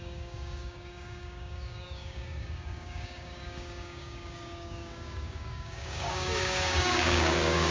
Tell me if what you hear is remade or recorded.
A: remade